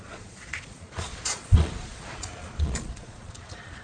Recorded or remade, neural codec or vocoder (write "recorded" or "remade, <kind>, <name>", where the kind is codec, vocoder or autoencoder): remade, vocoder, Vocos